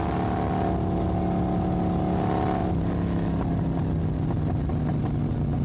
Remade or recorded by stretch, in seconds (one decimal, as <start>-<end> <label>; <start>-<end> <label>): 0.0-5.6 recorded